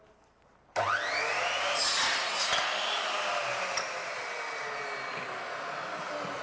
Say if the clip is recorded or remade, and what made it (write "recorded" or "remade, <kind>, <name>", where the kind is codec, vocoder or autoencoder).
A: recorded